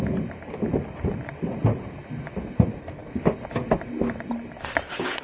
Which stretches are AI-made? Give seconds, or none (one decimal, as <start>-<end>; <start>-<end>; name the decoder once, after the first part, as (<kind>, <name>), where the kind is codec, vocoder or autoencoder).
none